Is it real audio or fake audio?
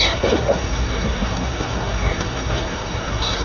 fake